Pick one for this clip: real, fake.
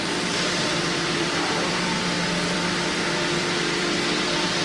fake